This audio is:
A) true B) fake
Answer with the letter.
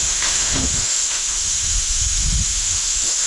B